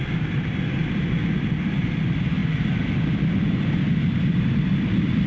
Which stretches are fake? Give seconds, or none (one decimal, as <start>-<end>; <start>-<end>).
0.0-0.8; 1.5-2.4; 4.4-5.3